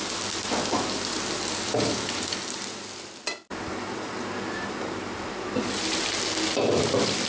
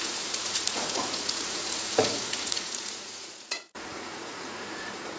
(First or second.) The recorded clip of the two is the first